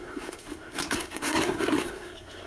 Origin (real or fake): fake